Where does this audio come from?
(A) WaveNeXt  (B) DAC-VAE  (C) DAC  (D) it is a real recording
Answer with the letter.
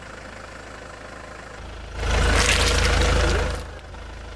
D